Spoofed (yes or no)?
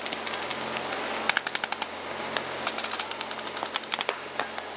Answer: no